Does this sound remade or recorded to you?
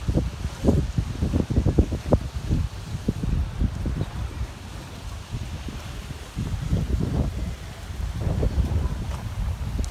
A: recorded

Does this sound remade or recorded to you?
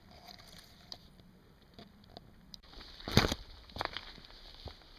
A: recorded